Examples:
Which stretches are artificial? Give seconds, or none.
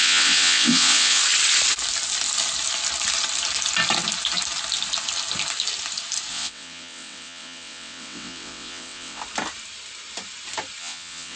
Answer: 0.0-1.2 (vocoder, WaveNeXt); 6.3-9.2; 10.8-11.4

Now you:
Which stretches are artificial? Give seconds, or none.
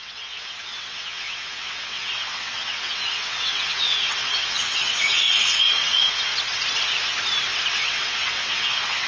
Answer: 0.0-6.3 (vocoder, WaveNeXt); 7.7-9.1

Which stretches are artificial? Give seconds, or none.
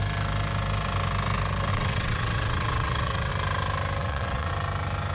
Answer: 1.7-3.3 (vocoder, WaveNeXt); 4.0-4.5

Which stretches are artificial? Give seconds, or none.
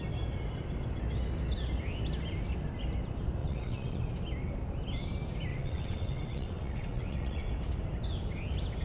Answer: 3.4-4.1 (vocoder, WaveNeXt); 5.5-7.5